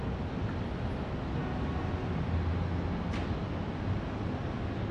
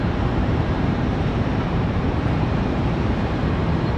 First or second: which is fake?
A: second